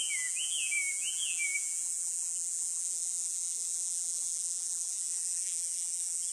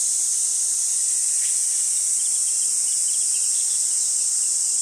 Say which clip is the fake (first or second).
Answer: first